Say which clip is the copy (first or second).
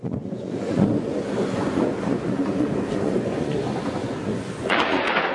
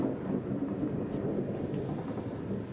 first